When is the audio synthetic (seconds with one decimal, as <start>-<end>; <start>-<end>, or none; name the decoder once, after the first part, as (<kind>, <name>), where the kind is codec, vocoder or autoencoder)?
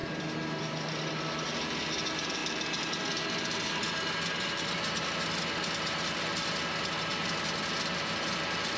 none